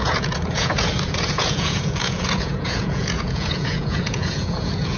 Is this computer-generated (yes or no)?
yes